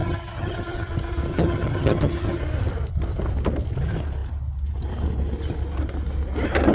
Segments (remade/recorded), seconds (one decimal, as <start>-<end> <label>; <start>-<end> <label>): 0.0-0.9 remade; 0.9-1.3 recorded; 1.3-2.4 remade; 2.4-6.7 recorded